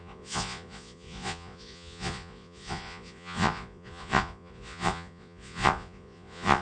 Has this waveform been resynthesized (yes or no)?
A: yes